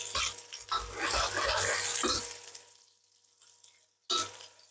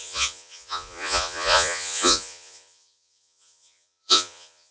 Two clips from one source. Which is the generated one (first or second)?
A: second